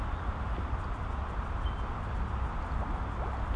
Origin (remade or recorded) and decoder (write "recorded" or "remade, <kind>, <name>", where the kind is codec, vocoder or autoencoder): recorded